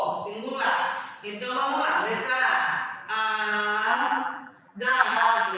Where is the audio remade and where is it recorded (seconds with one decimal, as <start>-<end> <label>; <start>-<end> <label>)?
0.0-3.9 recorded; 3.9-5.6 remade